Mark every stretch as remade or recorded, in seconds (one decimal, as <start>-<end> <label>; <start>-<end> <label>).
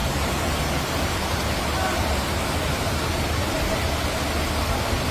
0.0-3.1 remade; 3.1-5.1 recorded